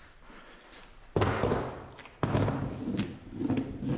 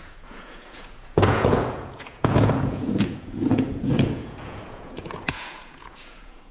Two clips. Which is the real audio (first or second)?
first